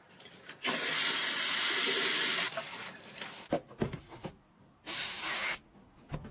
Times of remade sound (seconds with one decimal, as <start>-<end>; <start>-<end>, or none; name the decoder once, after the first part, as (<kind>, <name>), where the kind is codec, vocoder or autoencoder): 1.5-2.5 (vocoder, BigVGAN v2)